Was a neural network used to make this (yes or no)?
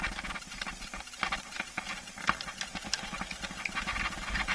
no